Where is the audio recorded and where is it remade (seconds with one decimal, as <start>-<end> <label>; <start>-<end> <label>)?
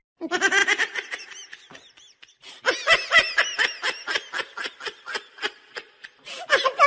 0.0-6.9 recorded